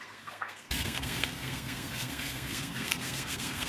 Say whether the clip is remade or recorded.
remade